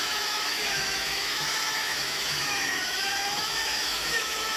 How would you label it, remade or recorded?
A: remade